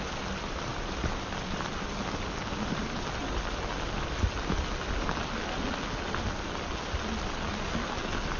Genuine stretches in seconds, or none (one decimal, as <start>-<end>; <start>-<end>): 0.0-8.4